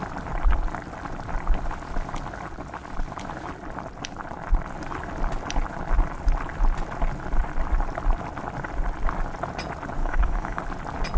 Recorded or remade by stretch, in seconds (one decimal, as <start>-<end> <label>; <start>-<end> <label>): 0.0-10.0 recorded; 10.0-10.6 remade; 10.6-11.2 recorded